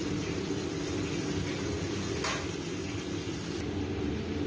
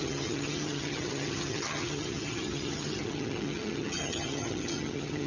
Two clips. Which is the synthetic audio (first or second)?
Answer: second